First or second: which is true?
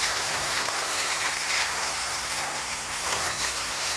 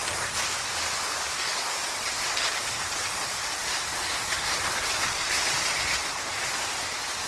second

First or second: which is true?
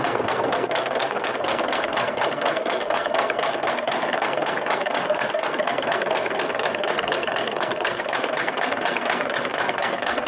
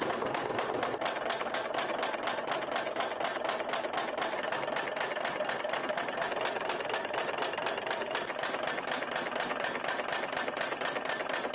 second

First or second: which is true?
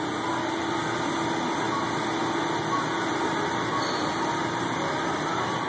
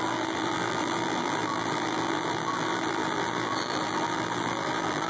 first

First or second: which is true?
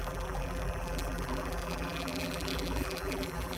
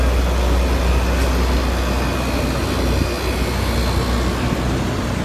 second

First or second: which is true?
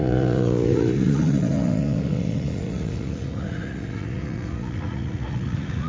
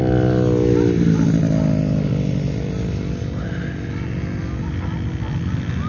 second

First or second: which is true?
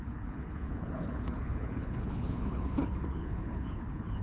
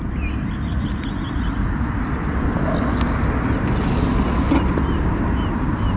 second